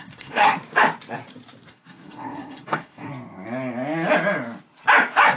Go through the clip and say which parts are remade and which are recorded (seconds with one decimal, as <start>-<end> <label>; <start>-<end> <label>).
0.0-0.6 remade; 0.6-1.7 recorded; 1.7-3.1 remade; 3.1-5.4 recorded